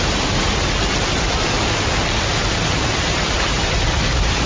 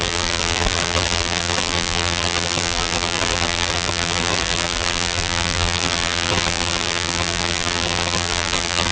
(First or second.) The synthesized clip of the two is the second